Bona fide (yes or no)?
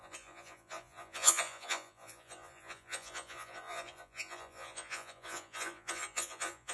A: no